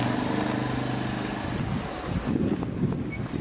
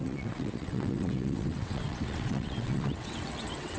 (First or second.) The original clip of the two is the first